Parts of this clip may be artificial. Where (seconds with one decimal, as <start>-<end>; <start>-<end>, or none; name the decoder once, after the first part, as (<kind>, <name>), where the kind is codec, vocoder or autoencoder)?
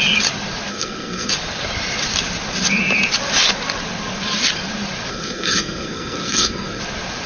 0.7-1.3 (codec, SNAC); 5.1-6.8